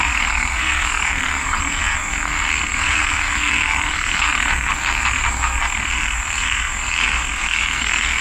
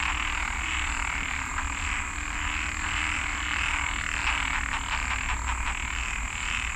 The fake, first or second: first